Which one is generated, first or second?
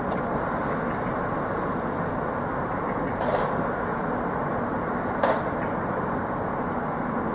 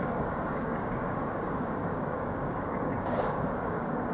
second